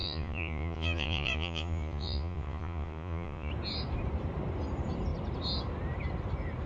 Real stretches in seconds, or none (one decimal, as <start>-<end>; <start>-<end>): 3.5-6.7